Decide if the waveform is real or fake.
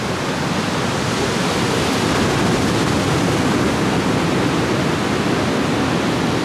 real